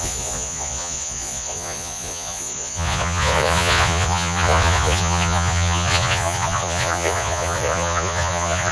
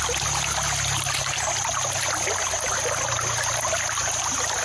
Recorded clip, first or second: second